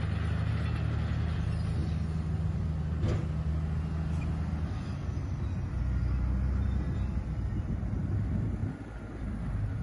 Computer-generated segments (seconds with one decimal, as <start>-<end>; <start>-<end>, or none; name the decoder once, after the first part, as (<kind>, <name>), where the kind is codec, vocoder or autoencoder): none